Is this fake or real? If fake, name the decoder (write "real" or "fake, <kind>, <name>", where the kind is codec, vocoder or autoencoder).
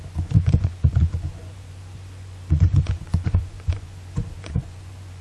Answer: fake, vocoder, Vocos